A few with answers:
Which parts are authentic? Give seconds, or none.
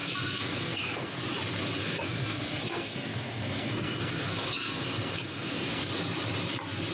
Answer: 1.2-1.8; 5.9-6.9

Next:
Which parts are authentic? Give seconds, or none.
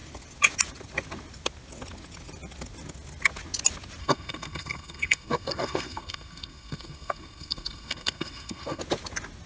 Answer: 0.0-4.0; 8.8-9.5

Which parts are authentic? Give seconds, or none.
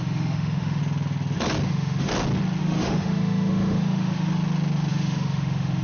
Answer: 0.8-1.7; 2.1-2.6; 4.3-4.9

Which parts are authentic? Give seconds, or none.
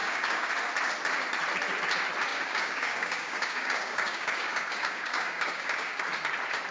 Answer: 0.5-2.3; 6.0-6.7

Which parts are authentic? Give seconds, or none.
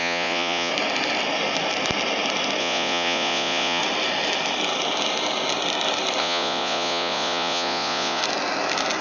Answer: 0.7-2.6; 3.8-6.2; 8.2-9.0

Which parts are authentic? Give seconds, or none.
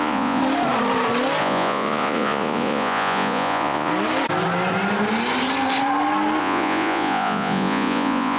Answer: 0.4-1.4; 3.9-6.4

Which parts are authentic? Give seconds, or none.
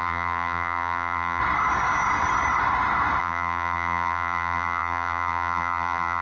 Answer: 1.4-3.2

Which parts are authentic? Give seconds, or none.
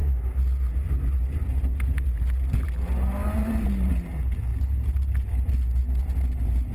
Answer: 0.0-6.7